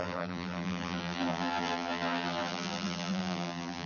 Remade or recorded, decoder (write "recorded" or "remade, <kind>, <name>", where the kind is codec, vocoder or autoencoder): remade, vocoder, BigVGAN v2